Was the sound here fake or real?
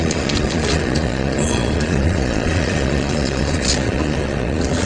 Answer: fake